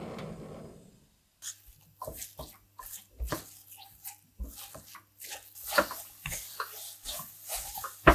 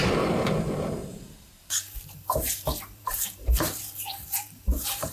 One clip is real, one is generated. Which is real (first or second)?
first